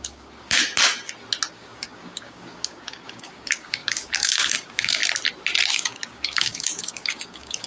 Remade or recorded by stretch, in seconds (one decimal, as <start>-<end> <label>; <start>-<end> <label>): 0.0-0.6 remade; 0.6-1.5 recorded; 1.5-5.0 remade; 5.0-5.7 recorded; 5.7-7.7 remade